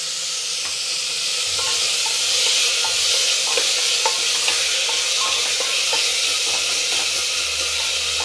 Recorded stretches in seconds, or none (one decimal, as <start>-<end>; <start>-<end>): 0.0-8.2